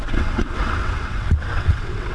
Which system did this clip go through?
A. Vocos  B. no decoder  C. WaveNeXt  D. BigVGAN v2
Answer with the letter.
C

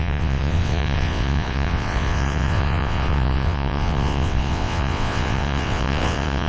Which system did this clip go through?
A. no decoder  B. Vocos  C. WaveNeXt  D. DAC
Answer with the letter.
C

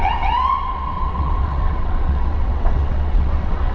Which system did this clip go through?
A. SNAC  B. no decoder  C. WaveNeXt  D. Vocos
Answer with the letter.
C